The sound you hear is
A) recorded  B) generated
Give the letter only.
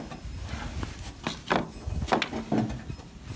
A